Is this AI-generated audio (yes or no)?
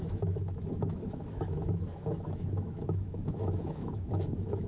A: yes